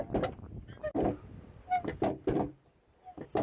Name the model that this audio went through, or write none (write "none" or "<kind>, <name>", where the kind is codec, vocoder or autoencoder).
none